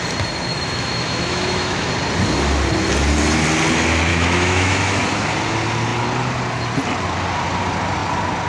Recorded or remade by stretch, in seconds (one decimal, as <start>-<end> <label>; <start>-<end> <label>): 0.0-0.5 recorded; 0.5-1.9 remade; 1.9-4.1 recorded; 4.1-5.0 remade; 5.0-8.5 recorded